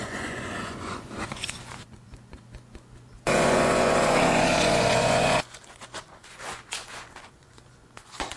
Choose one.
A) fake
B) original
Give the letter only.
A